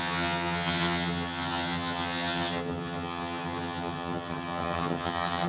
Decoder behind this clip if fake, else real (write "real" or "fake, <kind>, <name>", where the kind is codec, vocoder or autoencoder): fake, vocoder, HiFi-GAN